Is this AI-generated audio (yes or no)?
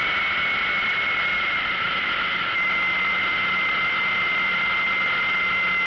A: no